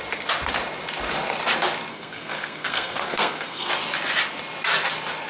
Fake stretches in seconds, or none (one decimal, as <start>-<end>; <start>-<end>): 1.9-3.7